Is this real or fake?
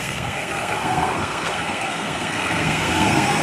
fake